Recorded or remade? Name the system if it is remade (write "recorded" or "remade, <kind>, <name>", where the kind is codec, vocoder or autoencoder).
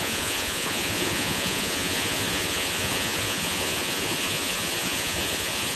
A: remade, vocoder, Vocos